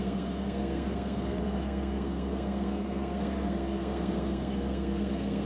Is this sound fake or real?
fake